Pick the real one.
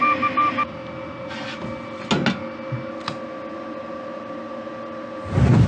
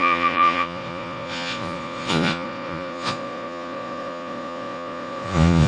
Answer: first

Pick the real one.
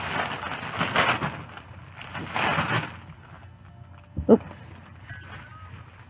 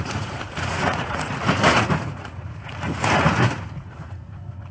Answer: first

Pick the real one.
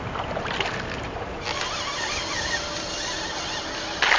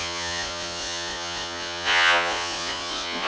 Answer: first